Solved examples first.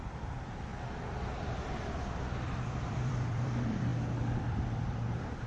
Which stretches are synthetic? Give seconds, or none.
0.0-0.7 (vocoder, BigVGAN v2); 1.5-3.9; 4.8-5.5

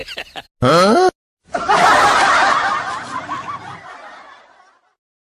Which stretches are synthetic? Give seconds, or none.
none

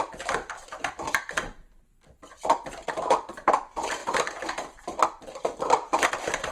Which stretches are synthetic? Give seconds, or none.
0.0-1.9 (vocoder, BigVGAN v2); 2.9-6.5

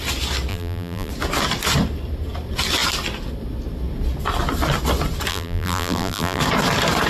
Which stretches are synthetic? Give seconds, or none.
0.5-1.1 (vocoder, BigVGAN v2); 5.3-6.4

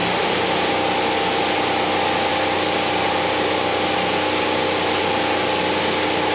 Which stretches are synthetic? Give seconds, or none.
0.0-0.7 (vocoder, BigVGAN v2)

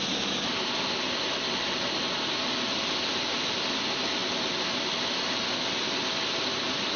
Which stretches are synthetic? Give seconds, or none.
4.2-6.1 (vocoder, BigVGAN v2)

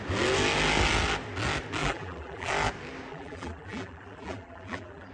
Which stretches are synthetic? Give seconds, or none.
1.8-2.5 (vocoder, BigVGAN v2); 3.1-5.1